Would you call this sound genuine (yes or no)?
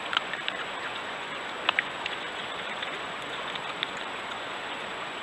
no